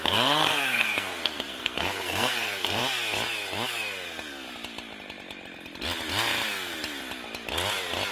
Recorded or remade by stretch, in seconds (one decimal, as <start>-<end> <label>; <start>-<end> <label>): 0.0-2.8 remade; 2.8-8.1 recorded